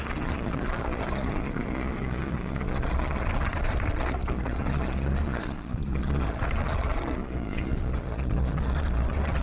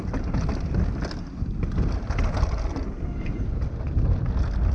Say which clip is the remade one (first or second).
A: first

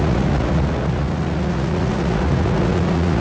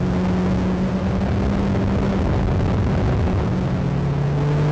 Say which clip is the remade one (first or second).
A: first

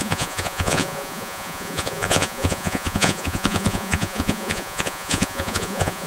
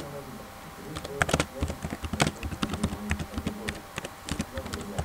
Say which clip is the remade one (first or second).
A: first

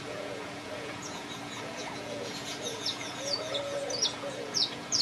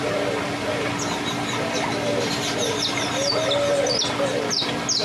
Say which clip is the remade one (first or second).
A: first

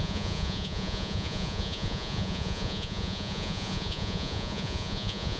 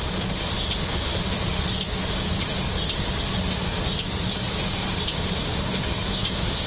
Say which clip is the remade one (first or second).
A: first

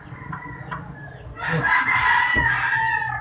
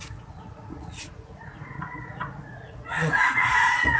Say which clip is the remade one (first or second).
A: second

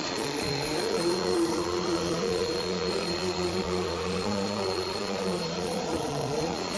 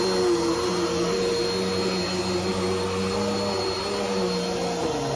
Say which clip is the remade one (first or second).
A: first